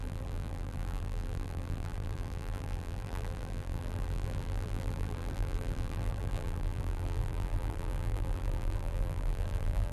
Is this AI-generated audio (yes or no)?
yes